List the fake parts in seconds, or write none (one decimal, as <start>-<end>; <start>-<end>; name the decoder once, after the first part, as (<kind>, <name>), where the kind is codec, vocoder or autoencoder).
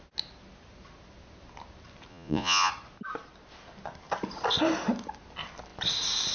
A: 2.1-2.7 (vocoder, Vocos)